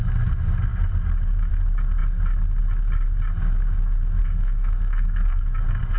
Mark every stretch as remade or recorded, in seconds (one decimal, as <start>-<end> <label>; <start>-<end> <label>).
0.0-4.2 recorded; 4.2-5.4 remade; 5.4-6.0 recorded